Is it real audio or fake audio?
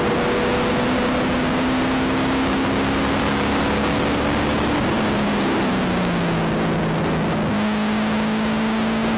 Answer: real